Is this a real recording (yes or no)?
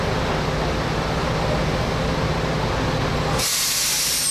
yes